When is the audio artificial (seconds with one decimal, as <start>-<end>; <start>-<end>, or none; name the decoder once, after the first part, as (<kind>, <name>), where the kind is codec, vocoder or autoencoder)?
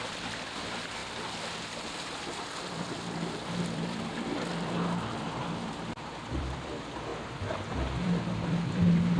0.0-1.0 (vocoder, BigVGAN v2); 1.6-7.1; 7.7-9.2